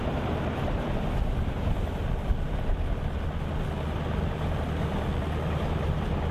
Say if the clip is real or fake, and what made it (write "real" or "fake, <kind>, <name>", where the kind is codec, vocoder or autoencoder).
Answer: real